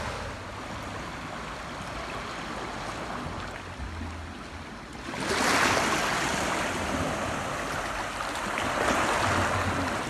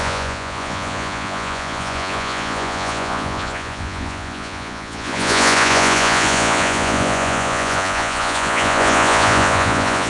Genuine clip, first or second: first